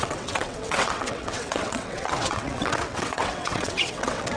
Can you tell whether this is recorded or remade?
remade